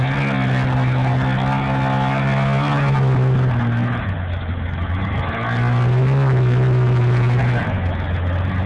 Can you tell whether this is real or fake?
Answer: real